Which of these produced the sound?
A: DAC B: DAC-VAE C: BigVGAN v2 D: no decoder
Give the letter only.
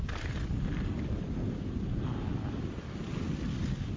D